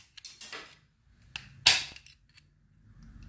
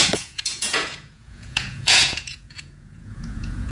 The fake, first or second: second